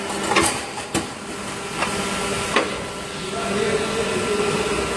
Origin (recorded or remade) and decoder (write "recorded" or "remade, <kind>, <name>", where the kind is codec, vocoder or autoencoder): recorded